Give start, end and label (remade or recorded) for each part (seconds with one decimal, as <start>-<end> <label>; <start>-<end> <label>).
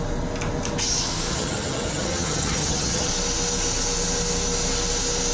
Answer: 0.0-1.3 recorded; 1.3-3.1 remade; 3.1-5.3 recorded